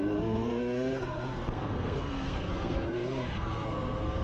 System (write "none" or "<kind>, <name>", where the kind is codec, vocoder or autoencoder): codec, SNAC